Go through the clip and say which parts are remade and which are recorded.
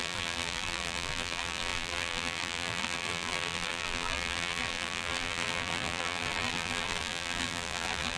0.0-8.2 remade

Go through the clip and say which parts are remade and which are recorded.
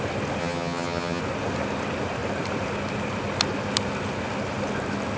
0.0-0.4 recorded; 0.4-1.2 remade; 1.2-5.2 recorded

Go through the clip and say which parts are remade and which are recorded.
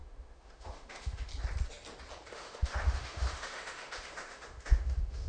0.0-1.3 remade; 1.3-2.3 recorded; 2.3-5.3 remade